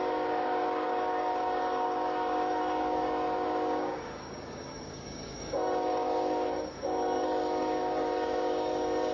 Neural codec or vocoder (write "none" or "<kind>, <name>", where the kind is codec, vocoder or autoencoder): codec, DAC